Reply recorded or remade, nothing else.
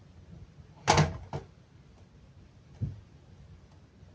recorded